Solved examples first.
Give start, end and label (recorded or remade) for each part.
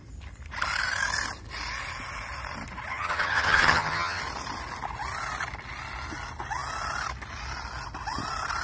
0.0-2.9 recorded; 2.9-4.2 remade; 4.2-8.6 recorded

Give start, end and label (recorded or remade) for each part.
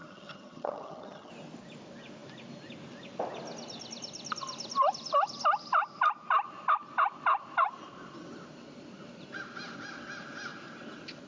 0.0-1.3 remade; 1.3-11.3 recorded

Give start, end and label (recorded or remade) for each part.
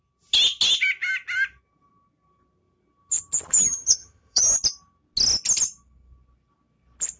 0.0-3.5 recorded; 3.5-4.4 remade; 4.4-7.2 recorded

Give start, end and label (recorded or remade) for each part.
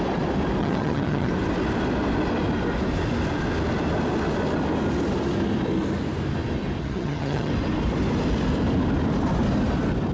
0.0-0.6 recorded; 0.6-1.3 remade; 1.3-6.8 recorded; 6.8-7.5 remade; 7.5-10.1 recorded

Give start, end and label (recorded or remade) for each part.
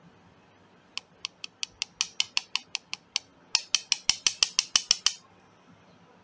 0.0-6.2 recorded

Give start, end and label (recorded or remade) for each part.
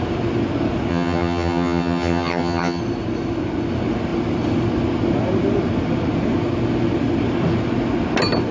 0.0-0.9 recorded; 0.9-2.8 remade; 2.8-8.5 recorded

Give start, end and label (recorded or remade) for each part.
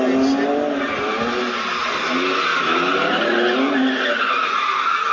0.0-5.1 recorded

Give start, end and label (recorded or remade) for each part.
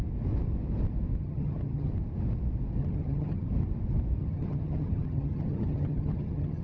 0.0-1.2 recorded; 1.2-1.9 remade; 1.9-2.8 recorded; 2.8-3.5 remade; 3.5-4.2 recorded; 4.2-6.6 remade